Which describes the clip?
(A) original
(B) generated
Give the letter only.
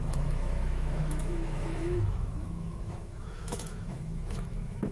B